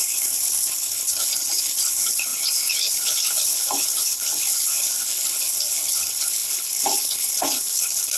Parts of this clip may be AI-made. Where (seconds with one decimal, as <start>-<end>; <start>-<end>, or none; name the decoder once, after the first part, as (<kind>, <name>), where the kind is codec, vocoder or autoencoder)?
0.0-8.2 (codec, HILCodec)